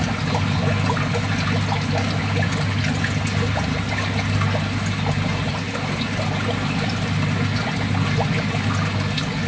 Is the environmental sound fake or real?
real